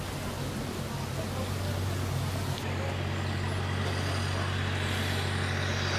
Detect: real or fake real